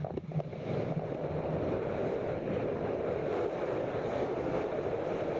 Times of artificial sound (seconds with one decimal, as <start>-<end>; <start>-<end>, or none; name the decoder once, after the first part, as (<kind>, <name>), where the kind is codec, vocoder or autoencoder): 3.8-4.6 (codec, SNAC)